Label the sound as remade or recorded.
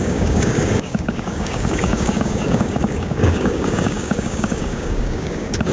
remade